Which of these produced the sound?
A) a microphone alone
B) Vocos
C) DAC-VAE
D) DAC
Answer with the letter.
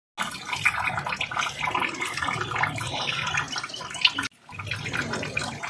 A